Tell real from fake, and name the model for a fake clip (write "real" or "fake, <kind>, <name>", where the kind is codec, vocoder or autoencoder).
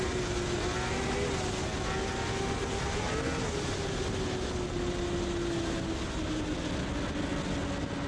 real